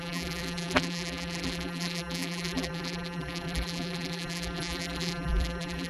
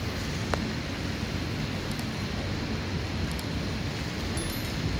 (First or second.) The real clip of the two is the second